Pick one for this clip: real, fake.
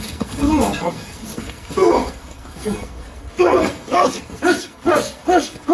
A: fake